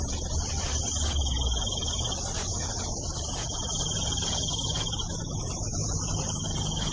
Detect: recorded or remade recorded